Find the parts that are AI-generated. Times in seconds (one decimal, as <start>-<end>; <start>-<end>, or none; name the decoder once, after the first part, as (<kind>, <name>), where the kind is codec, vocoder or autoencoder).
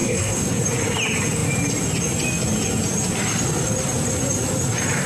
0.0-0.6 (codec, SNAC)